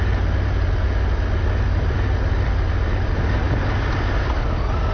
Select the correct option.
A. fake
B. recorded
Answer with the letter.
B